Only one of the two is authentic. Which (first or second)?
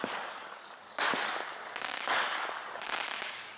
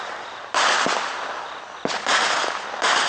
second